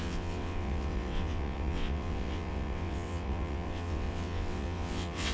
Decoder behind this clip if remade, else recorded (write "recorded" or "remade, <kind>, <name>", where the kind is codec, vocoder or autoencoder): remade, vocoder, WaveNeXt